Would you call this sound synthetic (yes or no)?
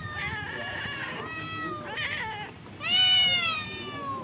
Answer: no